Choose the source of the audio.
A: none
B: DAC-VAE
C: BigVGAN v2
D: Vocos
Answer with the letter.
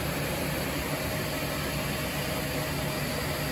A